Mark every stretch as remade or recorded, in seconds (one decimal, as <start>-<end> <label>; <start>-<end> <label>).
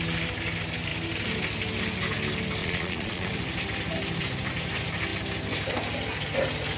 0.0-2.6 recorded; 2.6-3.3 remade; 3.3-6.8 recorded